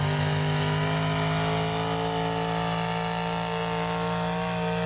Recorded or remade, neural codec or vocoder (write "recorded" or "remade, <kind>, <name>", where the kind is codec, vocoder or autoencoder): recorded